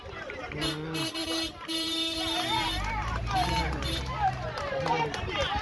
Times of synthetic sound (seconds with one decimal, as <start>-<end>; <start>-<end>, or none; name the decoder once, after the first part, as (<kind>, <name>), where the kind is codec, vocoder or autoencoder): 1.2-4.0 (vocoder, BigVGAN v2)